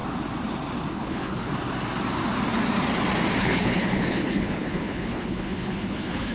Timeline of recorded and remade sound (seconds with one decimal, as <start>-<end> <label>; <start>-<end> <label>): 0.0-0.9 recorded; 0.9-1.5 remade; 1.5-3.4 recorded; 3.4-6.3 remade